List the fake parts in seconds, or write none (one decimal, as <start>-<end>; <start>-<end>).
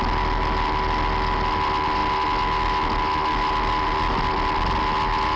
none